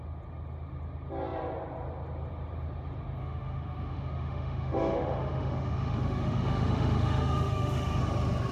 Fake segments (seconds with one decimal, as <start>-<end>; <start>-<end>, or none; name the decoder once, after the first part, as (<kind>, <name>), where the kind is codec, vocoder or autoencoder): 3.2-8.0 (autoencoder, DAC-VAE)